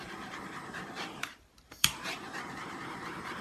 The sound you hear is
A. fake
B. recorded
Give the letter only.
A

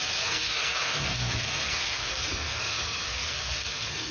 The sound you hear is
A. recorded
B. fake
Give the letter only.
B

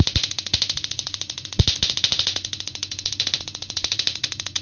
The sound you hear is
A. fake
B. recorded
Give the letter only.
A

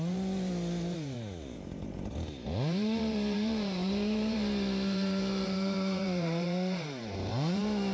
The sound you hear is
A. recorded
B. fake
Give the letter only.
B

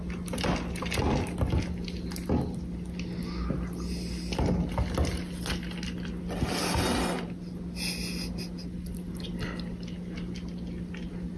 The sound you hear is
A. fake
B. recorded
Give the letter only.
B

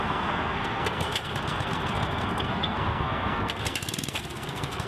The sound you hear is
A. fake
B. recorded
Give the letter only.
A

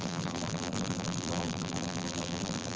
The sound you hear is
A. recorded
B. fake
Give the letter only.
B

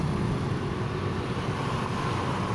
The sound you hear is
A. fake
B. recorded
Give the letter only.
B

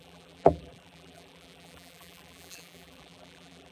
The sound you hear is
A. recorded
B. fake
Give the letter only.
B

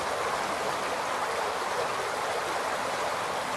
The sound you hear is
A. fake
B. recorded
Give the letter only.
B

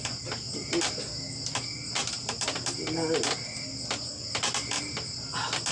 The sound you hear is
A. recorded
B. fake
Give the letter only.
A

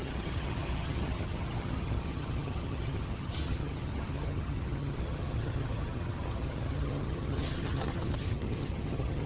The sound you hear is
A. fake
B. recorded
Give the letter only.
A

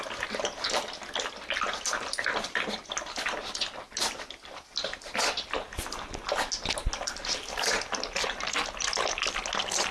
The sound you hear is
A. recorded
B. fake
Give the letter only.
A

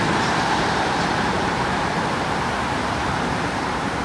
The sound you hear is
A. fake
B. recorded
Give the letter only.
A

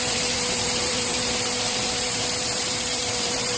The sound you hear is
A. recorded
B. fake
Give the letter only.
B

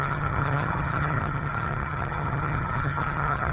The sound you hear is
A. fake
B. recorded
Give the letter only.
A